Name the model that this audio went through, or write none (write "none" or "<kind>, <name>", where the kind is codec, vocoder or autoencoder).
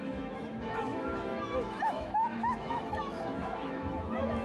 autoencoder, DAC-VAE